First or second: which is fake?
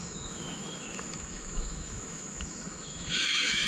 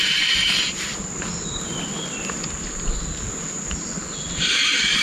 first